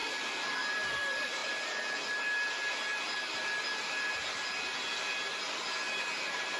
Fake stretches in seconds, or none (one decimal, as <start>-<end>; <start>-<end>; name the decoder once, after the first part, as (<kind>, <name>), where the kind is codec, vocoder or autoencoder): none